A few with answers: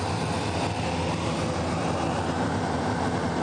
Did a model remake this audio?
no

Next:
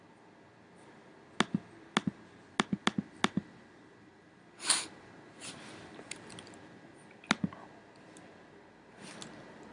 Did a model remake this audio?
no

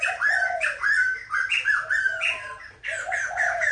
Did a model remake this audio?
no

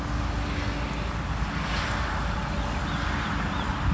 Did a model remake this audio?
no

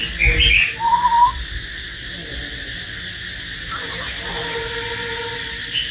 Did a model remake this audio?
no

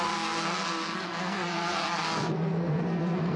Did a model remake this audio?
yes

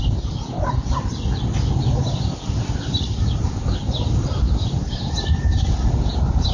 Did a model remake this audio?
no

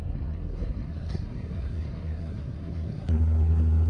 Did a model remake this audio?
yes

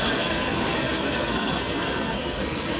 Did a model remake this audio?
yes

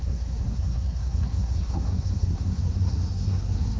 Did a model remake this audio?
yes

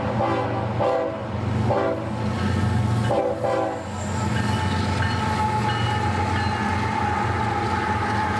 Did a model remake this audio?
no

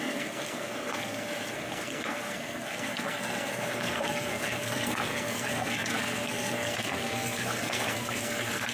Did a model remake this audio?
yes